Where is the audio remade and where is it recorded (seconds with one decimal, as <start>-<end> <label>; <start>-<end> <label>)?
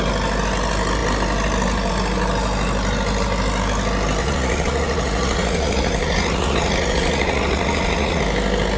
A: 0.0-4.2 recorded; 4.2-8.2 remade; 8.2-8.8 recorded